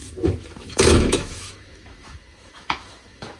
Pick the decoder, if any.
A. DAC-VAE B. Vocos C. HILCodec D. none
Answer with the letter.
A